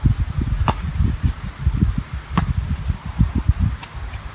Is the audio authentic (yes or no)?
yes